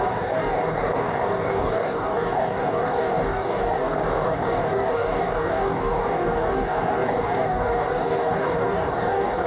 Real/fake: fake